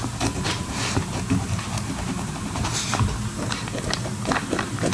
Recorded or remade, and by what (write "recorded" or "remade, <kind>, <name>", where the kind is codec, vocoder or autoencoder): remade, vocoder, BigVGAN v2